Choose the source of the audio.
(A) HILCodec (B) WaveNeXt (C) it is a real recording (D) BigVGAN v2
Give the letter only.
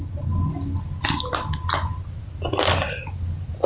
C